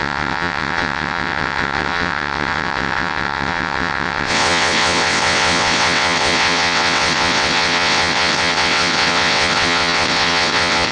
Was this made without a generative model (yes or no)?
no